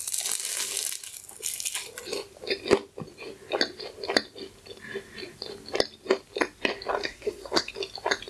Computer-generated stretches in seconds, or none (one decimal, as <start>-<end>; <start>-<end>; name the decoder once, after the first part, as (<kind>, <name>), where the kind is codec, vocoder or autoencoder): 7.0-7.7 (codec, SNAC)